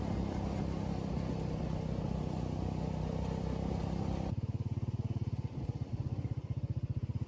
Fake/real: real